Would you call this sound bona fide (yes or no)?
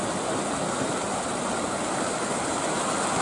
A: yes